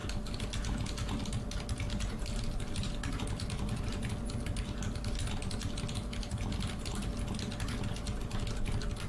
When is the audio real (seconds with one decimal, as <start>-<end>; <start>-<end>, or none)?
0.0-9.1